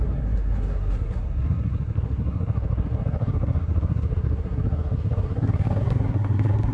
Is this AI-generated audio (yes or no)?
yes